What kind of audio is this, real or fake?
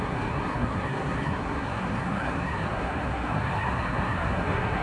fake